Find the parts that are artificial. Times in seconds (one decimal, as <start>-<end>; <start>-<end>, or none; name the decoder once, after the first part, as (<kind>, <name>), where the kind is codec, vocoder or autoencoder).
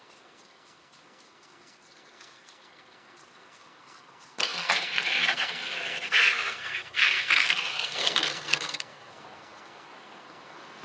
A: 0.0-10.8 (codec, SNAC)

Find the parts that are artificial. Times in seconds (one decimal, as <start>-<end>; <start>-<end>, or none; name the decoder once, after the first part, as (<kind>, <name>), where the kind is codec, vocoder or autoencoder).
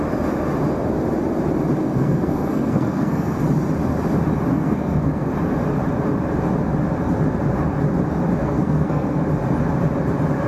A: 1.8-3.4 (codec, SNAC); 4.5-5.3; 8.4-9.2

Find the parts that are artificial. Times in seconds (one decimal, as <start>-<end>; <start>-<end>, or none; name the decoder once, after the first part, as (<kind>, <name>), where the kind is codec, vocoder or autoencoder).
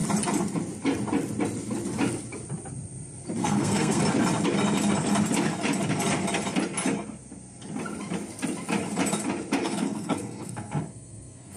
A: 3.4-4.0 (codec, SNAC); 9.6-11.6